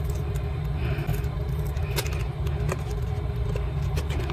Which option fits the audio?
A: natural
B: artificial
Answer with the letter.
A